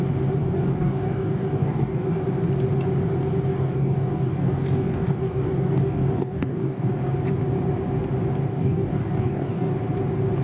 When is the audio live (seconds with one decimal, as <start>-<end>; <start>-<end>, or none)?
0.0-0.4; 2.2-3.5; 7.1-8.5; 9.7-10.4